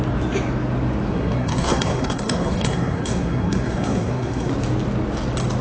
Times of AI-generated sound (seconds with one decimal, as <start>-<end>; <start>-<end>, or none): 1.1-4.5